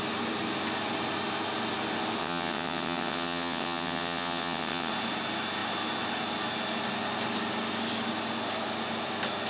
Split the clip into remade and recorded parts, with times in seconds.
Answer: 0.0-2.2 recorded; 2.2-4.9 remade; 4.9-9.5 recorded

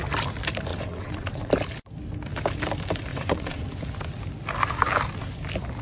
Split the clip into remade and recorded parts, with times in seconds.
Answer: 0.0-0.7 recorded; 0.7-1.5 remade; 1.5-3.1 recorded; 3.1-3.6 remade; 3.6-5.8 recorded

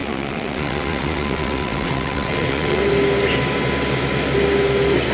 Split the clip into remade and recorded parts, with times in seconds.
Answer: 0.0-2.8 remade; 2.8-5.1 recorded

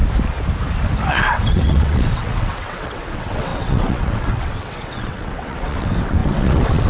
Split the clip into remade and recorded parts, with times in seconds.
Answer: 0.0-1.1 recorded; 1.1-6.9 remade

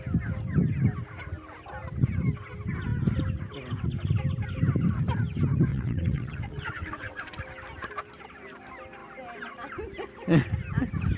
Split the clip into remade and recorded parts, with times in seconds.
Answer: 0.0-5.7 recorded; 5.7-7.4 remade; 7.4-11.2 recorded

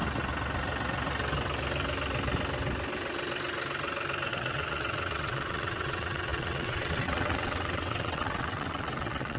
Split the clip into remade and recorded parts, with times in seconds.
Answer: 0.0-4.3 recorded; 4.3-9.4 remade